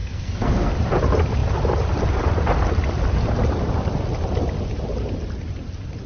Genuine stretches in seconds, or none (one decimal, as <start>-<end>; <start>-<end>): 0.7-6.1